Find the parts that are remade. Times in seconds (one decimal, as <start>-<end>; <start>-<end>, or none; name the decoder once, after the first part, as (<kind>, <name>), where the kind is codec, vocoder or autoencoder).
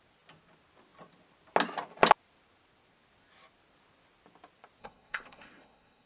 4.8-6.1 (codec, SNAC)